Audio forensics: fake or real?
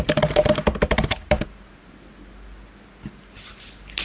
real